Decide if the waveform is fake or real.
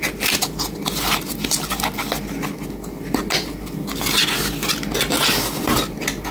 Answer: real